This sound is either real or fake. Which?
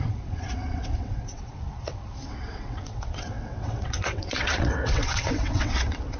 fake